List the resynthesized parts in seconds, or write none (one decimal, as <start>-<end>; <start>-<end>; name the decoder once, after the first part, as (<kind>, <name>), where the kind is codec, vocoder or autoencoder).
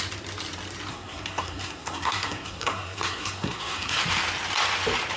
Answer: 0.9-4.0 (codec, SNAC)